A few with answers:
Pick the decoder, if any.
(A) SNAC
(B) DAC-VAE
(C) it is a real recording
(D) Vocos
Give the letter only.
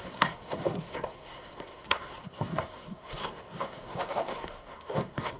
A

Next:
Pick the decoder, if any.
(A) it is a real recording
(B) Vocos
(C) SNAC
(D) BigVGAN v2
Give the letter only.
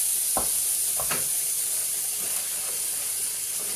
A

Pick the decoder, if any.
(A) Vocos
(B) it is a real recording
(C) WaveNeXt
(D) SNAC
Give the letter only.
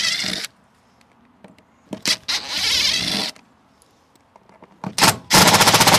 B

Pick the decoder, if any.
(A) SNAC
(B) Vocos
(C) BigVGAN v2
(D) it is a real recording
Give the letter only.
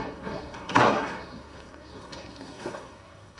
A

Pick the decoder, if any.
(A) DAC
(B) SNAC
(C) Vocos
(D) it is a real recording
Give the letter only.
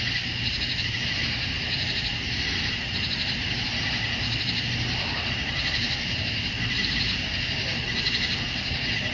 D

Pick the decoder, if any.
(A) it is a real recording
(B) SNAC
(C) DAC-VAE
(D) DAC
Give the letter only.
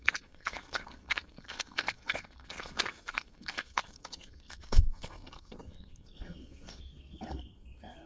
B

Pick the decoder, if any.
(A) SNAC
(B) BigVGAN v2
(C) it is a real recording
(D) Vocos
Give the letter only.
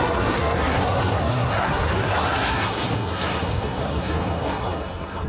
A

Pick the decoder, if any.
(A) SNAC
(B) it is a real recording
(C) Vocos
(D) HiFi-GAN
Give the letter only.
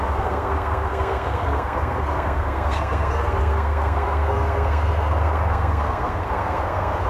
A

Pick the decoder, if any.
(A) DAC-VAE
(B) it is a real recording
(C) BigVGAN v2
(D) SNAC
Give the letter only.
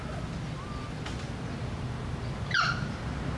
B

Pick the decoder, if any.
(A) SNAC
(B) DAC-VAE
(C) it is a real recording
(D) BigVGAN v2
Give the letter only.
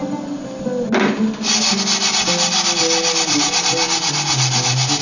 C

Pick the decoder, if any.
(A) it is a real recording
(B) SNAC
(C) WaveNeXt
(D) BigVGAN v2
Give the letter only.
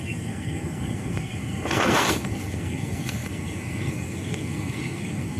B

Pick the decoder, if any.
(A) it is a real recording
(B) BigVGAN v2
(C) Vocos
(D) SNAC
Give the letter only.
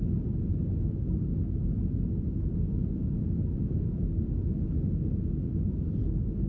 A